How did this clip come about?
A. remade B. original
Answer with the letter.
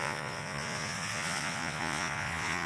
A